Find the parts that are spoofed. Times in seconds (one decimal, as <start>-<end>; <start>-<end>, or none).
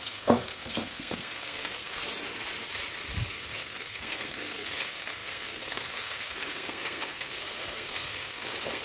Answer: 0.0-2.0; 3.3-8.8